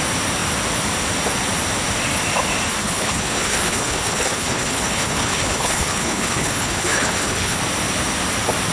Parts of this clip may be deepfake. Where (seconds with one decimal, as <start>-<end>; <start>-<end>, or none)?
2.8-7.6